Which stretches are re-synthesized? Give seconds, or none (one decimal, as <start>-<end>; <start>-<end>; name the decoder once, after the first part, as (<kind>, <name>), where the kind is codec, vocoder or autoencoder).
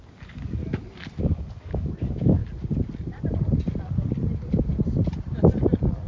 0.0-0.6 (codec, DAC); 1.2-2.4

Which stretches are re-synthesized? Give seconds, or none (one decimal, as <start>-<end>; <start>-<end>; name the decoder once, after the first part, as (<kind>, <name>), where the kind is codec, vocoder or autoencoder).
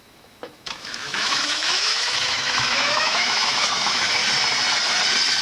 0.0-4.2 (autoencoder, DAC-VAE)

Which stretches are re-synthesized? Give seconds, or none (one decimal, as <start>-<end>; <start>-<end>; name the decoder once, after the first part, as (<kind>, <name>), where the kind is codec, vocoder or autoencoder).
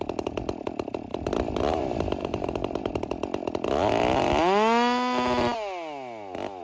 2.2-2.9 (vocoder, BigVGAN v2)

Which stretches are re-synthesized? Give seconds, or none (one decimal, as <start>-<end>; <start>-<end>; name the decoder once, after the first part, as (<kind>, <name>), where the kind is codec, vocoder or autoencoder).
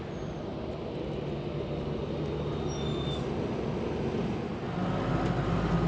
none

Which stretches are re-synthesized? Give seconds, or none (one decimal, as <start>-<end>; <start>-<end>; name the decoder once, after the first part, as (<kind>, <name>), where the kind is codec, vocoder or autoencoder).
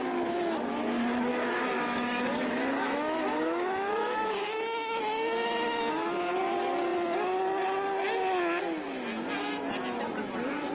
1.3-5.0 (autoencoder, DAC-VAE)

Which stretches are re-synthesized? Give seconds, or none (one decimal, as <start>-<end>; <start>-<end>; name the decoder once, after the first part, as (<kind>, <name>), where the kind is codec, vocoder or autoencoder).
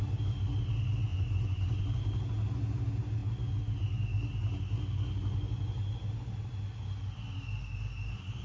1.1-1.8 (vocoder, Vocos)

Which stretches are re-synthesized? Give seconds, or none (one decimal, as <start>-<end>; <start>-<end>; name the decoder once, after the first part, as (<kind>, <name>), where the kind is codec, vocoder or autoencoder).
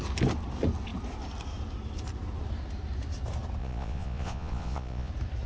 3.6-5.1 (vocoder, Vocos)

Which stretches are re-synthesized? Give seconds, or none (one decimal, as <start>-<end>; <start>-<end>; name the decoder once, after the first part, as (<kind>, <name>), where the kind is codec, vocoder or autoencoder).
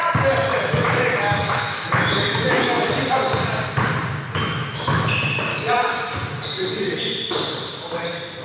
0.5-2.9 (autoencoder, DAC-VAE); 4.4-5.1; 5.5-6.1